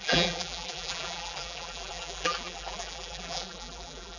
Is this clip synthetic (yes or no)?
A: yes